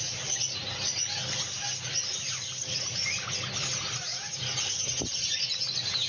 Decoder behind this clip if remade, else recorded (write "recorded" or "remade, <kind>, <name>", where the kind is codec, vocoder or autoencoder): recorded